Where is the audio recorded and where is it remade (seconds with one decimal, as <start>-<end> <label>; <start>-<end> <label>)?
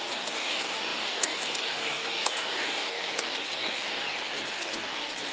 0.0-5.3 remade